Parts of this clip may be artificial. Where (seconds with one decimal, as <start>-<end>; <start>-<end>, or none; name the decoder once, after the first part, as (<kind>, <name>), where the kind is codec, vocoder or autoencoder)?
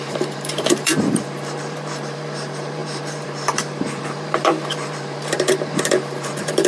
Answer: 0.0-6.7 (vocoder, BigVGAN v2)